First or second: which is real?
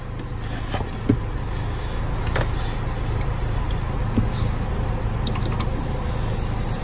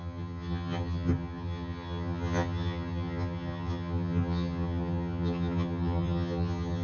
first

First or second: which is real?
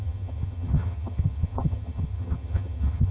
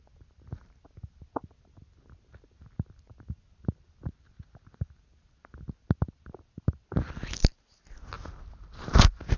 second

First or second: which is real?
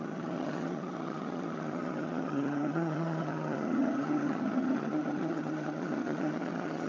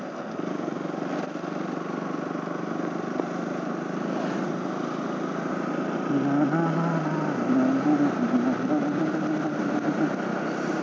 second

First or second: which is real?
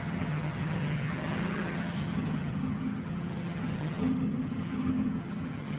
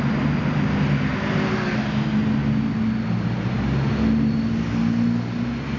second